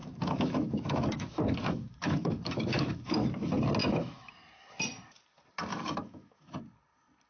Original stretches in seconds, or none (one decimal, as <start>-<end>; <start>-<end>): 3.3-3.8; 4.3-5.7; 6.6-7.3